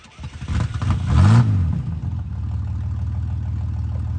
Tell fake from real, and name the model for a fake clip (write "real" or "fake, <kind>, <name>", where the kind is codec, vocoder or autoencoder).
real